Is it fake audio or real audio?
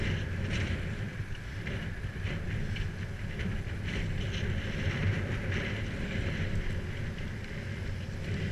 real